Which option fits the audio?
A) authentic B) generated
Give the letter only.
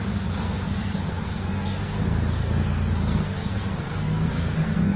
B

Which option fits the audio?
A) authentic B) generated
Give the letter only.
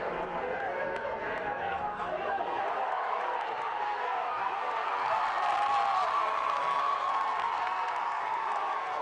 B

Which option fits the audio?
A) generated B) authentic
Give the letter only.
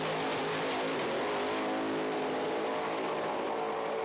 B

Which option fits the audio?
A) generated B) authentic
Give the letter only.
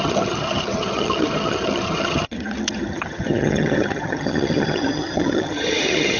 A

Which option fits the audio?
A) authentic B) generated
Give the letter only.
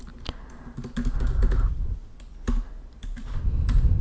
A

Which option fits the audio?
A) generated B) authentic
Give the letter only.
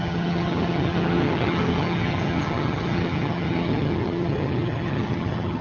A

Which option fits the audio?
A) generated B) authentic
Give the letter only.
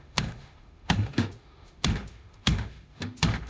A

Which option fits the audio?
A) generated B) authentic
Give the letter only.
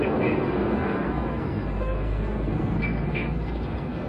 A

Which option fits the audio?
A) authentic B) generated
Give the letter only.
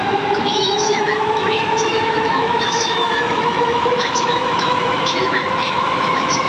B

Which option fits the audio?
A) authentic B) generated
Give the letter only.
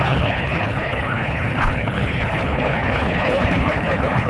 B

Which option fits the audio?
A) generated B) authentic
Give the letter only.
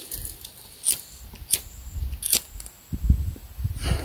B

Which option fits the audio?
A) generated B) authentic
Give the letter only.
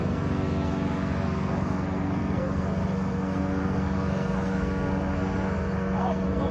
A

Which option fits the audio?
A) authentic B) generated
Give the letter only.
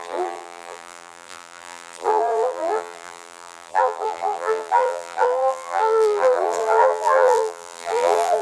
B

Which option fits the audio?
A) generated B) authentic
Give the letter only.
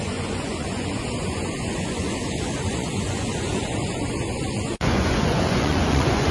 A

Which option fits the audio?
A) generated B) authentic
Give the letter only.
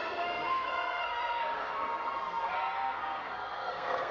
A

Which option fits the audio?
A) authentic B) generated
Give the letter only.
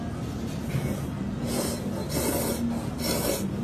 A